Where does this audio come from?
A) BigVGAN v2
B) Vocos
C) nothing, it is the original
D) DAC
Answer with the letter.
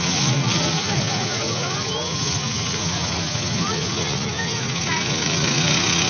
B